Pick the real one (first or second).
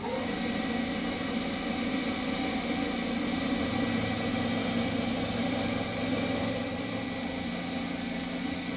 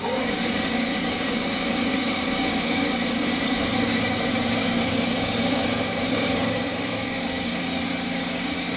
first